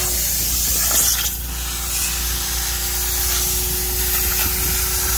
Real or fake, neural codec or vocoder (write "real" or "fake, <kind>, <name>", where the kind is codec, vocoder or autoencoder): real